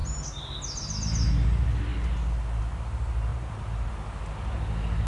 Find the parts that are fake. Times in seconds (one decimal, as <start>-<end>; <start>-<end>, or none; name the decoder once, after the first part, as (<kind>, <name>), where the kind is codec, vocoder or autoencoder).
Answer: 3.3-3.9 (vocoder, BigVGAN v2)